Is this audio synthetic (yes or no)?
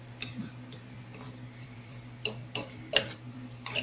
yes